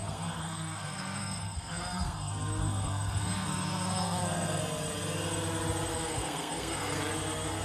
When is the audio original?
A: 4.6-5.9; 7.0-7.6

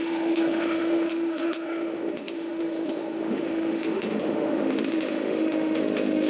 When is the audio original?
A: none

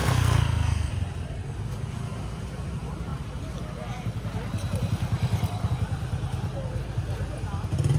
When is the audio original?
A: 0.9-8.0

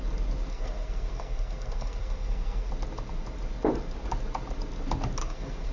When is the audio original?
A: 0.0-0.5; 2.7-5.2

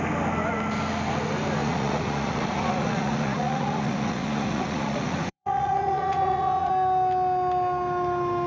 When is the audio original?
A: 0.0-1.6; 6.7-8.5

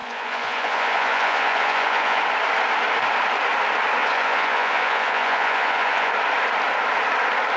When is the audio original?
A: 2.2-4.0; 6.1-7.6

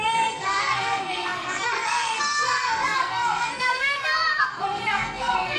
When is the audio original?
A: none

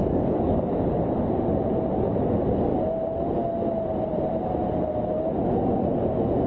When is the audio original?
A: 0.7-6.5